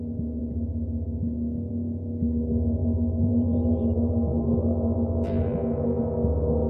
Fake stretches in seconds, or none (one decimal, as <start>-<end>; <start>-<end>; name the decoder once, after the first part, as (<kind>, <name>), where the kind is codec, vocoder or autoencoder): 2.8-6.0 (vocoder, BigVGAN v2)